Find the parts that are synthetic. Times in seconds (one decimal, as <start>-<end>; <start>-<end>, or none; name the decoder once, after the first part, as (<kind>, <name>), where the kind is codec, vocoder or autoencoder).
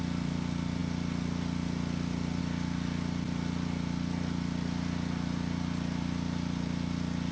none